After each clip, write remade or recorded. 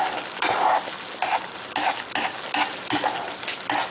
recorded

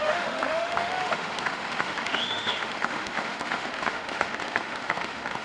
remade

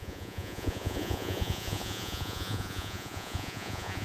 remade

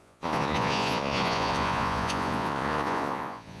remade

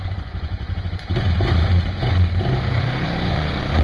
remade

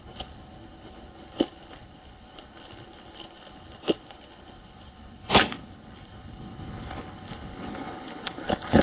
remade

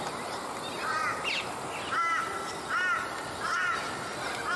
recorded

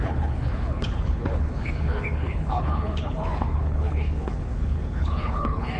remade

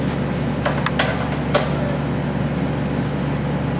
recorded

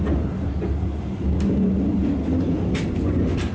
recorded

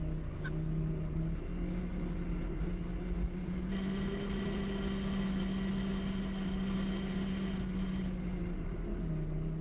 recorded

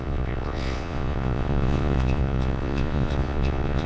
remade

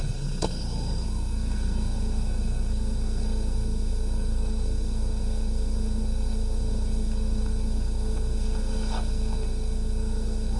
remade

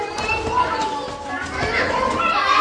recorded